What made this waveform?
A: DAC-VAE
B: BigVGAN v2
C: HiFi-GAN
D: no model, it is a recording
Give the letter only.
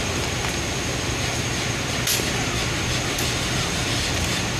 D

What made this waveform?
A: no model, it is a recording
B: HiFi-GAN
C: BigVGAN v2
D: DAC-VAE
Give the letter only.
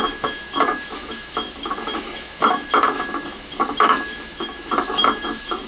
D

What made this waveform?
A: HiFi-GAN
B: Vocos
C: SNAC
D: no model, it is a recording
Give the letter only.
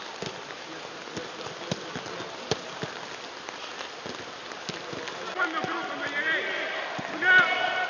D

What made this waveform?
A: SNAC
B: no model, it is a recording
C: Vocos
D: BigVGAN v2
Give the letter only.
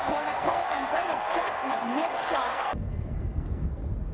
A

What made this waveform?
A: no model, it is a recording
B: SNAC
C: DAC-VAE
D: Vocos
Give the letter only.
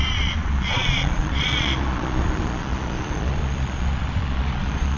D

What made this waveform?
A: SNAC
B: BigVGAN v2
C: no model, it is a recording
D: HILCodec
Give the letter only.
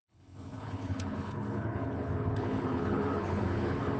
D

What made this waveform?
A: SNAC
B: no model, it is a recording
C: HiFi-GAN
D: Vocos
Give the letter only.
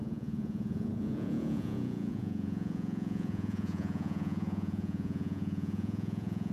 D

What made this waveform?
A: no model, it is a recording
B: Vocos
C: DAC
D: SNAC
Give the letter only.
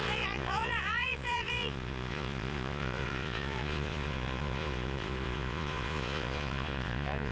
B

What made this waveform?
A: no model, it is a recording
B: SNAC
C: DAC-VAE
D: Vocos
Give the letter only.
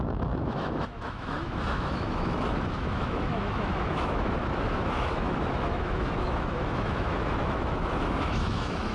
C